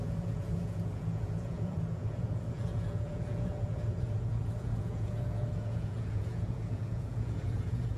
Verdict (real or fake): fake